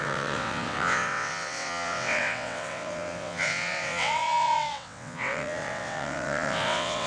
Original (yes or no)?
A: no